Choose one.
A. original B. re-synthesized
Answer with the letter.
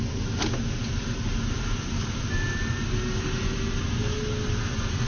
A